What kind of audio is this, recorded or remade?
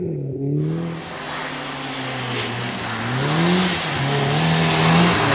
recorded